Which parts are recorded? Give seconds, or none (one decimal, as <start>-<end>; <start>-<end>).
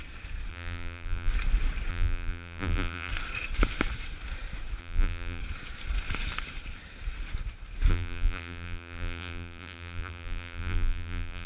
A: 0.0-0.5; 1.3-1.9; 3.1-4.8; 5.4-7.9